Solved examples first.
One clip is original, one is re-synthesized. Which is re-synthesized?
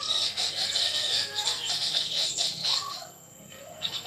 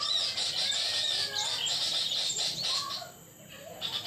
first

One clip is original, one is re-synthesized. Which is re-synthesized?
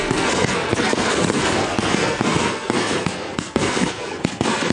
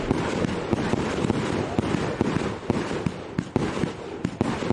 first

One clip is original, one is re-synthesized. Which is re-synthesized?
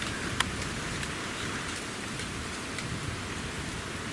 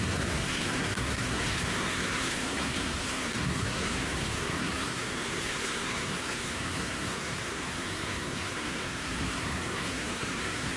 second